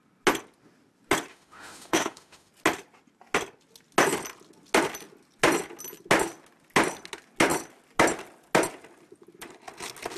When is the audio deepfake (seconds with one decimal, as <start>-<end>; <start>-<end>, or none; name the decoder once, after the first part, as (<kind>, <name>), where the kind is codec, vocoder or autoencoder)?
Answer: 1.3-2.5 (autoencoder, DAC-VAE)